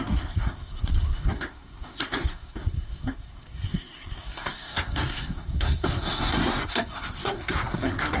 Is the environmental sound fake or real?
fake